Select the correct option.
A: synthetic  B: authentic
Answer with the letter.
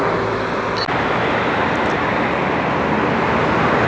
B